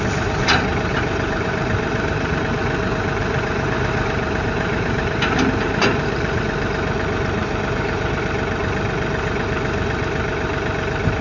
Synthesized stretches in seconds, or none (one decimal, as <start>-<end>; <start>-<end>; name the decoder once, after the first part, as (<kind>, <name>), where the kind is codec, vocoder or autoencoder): 0.9-2.4 (vocoder, BigVGAN v2); 3.2-6.4; 7.4-8.1